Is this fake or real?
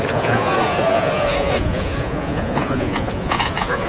fake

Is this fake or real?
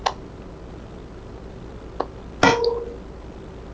real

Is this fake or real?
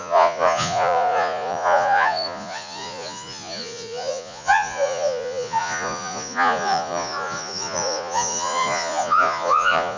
fake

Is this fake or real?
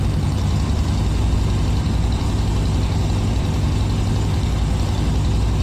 real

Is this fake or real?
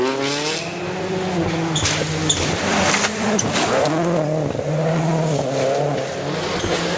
real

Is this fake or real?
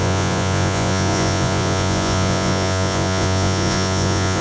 fake